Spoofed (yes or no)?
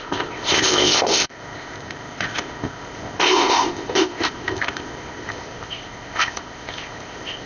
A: yes